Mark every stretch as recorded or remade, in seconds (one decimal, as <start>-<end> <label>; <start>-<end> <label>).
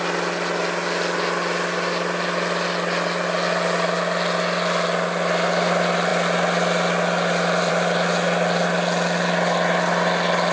0.0-10.5 recorded